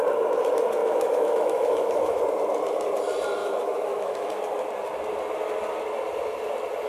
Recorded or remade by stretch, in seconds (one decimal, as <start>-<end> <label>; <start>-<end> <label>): 0.0-0.8 recorded; 0.8-2.2 remade; 2.2-3.4 recorded; 3.4-4.4 remade; 4.4-6.9 recorded